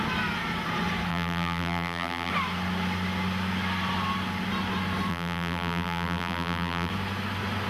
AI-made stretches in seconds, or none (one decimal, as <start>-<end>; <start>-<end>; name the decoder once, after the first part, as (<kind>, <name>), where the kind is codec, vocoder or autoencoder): 1.1-2.3 (vocoder, BigVGAN v2); 5.1-6.9